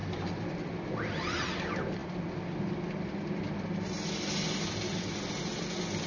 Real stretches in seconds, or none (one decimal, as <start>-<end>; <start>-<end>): 0.5-6.1